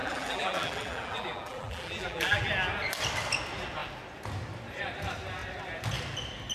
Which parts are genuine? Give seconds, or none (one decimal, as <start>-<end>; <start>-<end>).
2.5-6.5